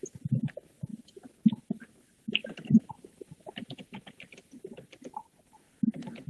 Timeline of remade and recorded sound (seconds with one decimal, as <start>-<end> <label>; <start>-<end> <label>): 0.0-6.3 recorded